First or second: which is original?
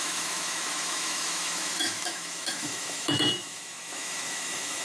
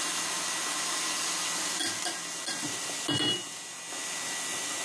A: second